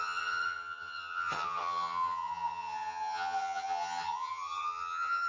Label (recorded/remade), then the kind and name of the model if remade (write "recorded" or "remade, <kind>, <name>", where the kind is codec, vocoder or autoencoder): remade, vocoder, HiFi-GAN